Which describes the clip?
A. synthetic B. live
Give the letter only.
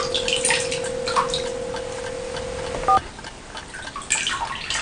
B